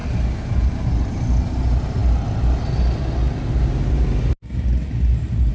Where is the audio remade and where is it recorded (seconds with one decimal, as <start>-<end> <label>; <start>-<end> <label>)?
0.0-5.5 recorded